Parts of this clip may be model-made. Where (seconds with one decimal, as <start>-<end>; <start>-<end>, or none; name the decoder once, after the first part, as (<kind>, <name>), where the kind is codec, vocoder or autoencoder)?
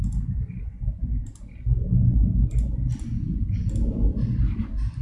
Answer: none